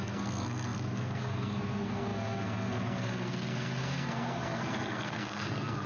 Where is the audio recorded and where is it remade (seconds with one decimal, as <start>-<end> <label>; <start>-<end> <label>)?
0.0-5.9 remade